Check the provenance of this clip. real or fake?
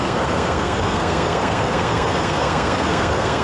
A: fake